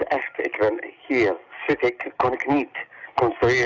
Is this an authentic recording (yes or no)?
yes